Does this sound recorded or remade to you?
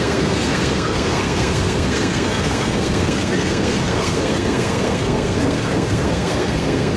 remade